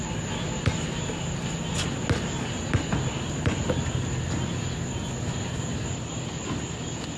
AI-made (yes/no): no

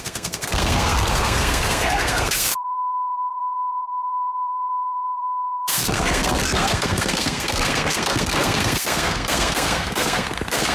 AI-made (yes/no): yes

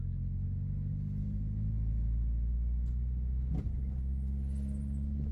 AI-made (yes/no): no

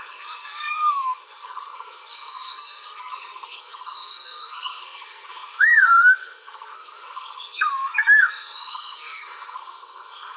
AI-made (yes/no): yes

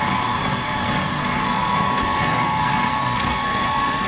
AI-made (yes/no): yes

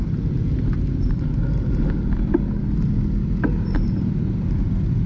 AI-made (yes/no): no